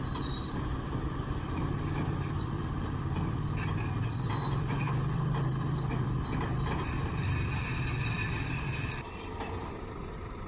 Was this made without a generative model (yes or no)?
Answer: no